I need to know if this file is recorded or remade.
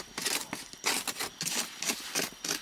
recorded